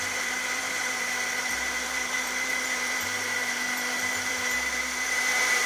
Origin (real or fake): fake